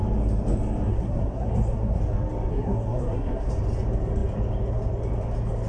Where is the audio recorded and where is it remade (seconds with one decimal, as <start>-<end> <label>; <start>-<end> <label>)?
0.0-0.9 recorded; 0.9-2.0 remade; 2.0-2.5 recorded; 2.5-3.5 remade; 3.5-5.7 recorded